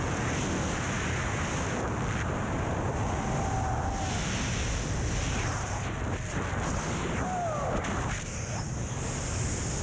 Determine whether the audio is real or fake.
real